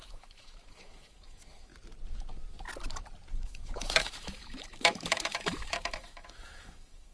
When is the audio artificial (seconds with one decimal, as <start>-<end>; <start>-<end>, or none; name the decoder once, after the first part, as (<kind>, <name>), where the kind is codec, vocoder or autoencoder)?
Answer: 0.0-1.7 (autoencoder, DAC-VAE); 3.3-7.1